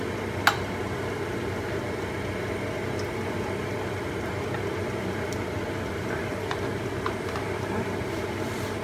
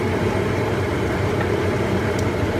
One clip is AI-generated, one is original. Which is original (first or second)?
first